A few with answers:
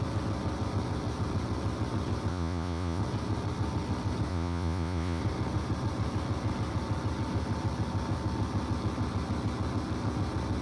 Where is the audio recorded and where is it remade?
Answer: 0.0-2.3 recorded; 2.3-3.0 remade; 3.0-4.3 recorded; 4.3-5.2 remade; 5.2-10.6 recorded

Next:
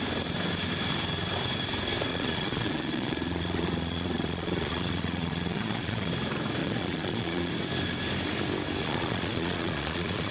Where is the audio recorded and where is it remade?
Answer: 0.0-2.1 recorded; 2.1-6.1 remade; 6.1-6.6 recorded; 6.6-7.5 remade; 7.5-8.8 recorded; 8.8-10.3 remade

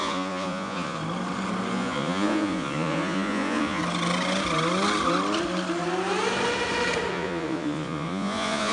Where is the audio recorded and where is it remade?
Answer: 0.0-1.0 remade; 1.0-1.7 recorded; 1.7-3.8 remade; 3.8-7.1 recorded; 7.1-8.7 remade

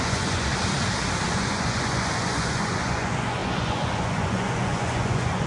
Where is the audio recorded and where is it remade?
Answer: 0.0-0.5 remade; 0.5-1.3 recorded; 1.3-5.5 remade

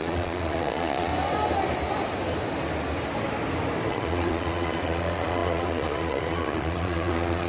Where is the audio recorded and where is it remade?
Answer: 0.0-1.1 remade; 1.1-3.9 recorded; 3.9-7.5 remade

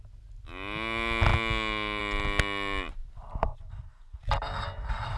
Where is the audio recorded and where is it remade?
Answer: 0.0-3.5 recorded; 3.5-4.2 remade; 4.2-5.2 recorded